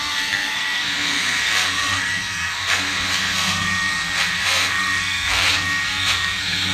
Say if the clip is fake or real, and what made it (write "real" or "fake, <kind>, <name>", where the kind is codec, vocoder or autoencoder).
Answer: fake, codec, SNAC